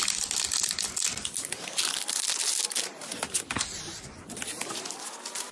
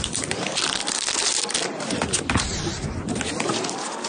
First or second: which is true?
first